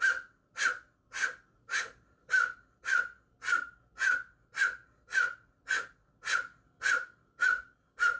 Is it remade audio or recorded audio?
recorded